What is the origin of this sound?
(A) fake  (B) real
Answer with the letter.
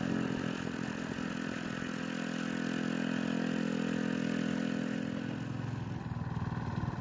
B